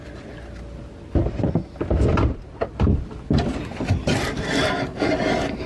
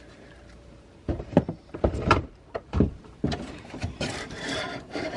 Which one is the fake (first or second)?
second